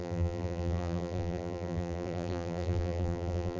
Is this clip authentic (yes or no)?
no